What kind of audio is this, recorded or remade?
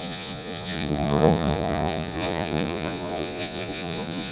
remade